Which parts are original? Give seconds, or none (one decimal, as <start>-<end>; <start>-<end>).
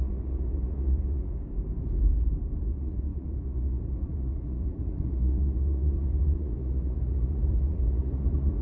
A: 1.3-2.6